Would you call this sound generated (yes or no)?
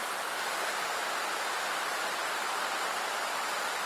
yes